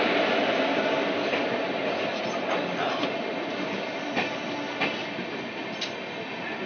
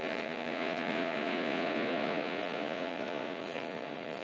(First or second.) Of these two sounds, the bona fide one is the first